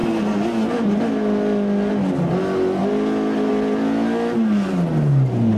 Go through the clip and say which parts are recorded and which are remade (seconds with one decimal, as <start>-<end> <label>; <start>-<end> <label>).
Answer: 0.0-5.6 recorded